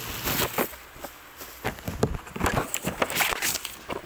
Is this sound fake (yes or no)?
no